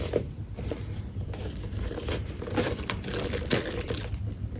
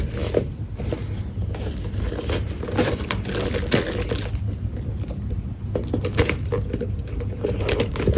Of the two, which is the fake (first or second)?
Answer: first